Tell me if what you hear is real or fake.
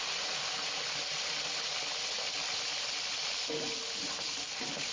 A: real